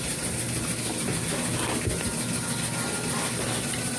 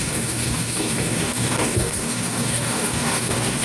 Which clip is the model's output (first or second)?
second